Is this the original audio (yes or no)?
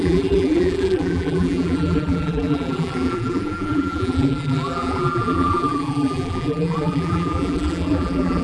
no